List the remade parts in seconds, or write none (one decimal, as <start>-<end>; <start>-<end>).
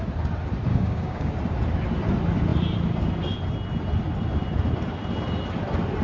0.7-1.3